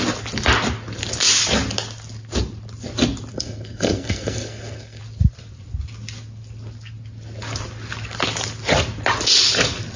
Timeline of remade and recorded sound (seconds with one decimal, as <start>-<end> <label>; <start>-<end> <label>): 0.0-3.3 recorded; 3.3-5.0 remade; 5.0-10.0 recorded